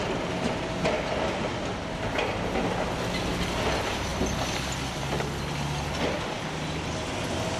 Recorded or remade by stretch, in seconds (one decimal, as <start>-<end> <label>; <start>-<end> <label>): 0.0-7.6 recorded